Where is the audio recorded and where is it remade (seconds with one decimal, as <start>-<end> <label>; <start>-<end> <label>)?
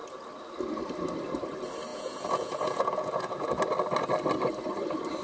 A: 0.0-1.9 recorded; 1.9-3.6 remade; 3.6-5.2 recorded